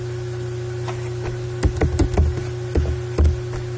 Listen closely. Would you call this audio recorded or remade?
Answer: recorded